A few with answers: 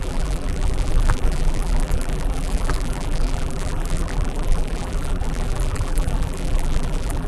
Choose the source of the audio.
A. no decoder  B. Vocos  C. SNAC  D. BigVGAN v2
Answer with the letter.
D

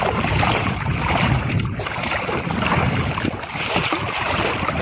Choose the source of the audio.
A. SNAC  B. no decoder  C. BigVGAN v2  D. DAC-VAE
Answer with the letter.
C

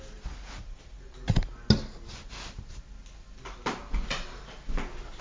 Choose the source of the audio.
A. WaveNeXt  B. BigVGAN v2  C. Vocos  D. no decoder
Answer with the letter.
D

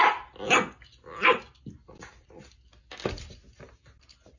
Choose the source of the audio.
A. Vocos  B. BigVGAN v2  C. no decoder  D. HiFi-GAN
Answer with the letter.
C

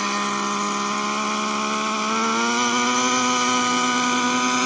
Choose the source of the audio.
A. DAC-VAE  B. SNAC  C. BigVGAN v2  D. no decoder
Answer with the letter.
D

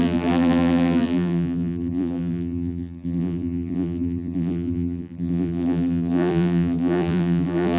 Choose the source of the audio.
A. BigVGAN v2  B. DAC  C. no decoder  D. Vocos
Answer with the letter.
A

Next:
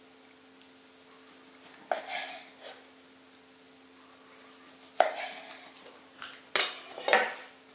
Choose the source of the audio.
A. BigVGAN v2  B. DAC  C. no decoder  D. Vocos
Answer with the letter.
C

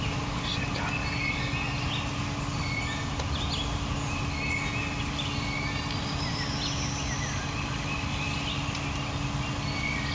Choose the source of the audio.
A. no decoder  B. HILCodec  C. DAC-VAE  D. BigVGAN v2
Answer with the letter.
A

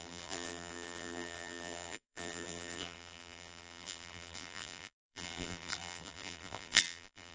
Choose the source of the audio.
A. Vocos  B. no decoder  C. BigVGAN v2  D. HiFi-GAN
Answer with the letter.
C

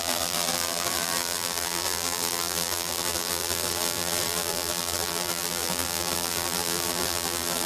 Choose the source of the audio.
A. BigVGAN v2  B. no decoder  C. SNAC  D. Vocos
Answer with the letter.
A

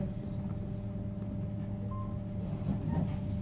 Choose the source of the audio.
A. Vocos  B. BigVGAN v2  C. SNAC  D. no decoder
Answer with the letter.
D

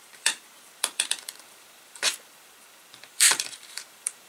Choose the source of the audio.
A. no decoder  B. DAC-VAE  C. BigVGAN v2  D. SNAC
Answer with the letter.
C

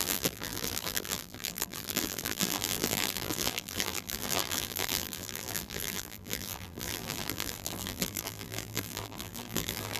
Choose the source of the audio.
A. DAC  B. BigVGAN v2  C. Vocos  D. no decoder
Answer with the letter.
B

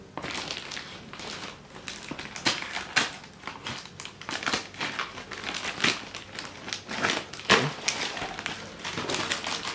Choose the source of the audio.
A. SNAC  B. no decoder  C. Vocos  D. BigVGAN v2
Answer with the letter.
B